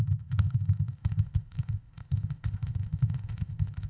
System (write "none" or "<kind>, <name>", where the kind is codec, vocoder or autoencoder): codec, ZipCodec